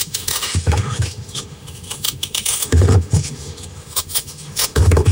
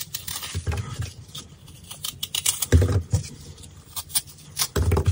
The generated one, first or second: first